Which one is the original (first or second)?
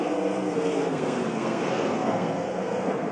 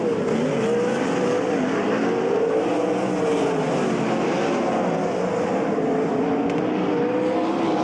second